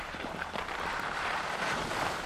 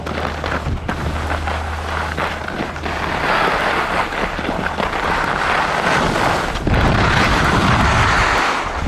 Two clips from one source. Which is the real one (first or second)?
second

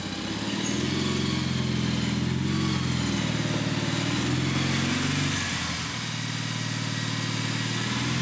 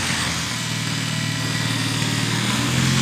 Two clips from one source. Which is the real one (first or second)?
first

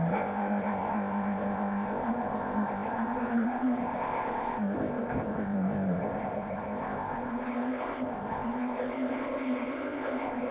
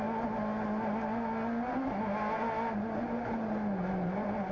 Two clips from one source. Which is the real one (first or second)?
second